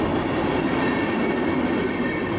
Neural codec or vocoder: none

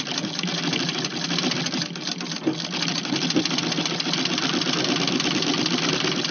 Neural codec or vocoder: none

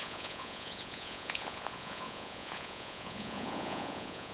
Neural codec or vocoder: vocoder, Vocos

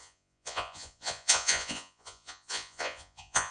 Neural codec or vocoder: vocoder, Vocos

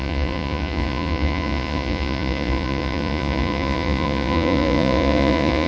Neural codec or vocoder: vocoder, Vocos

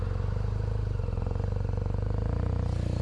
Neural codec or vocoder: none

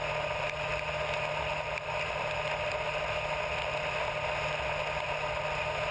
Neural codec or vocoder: none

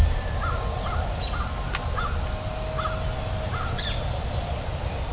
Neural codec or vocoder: none